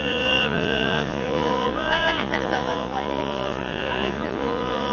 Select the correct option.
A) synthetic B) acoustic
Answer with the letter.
A